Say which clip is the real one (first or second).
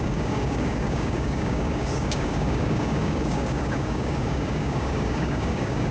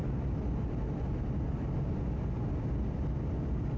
second